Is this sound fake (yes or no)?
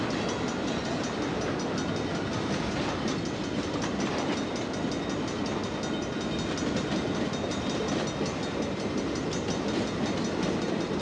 no